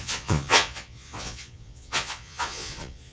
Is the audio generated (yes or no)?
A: yes